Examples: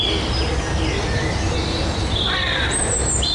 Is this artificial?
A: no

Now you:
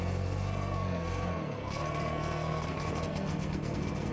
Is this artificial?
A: yes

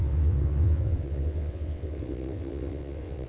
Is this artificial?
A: yes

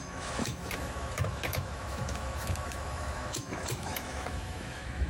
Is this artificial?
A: yes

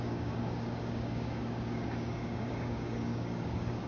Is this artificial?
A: yes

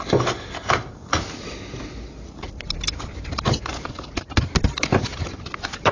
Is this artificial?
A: no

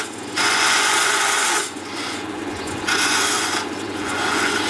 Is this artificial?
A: yes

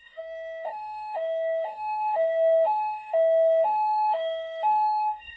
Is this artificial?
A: yes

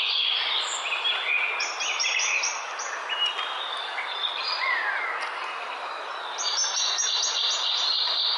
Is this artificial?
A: no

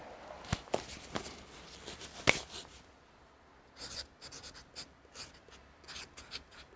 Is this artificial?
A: no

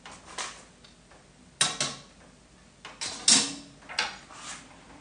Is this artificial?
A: no